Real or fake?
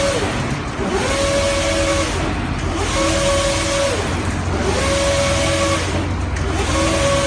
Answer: real